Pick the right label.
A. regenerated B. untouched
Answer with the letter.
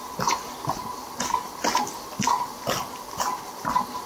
B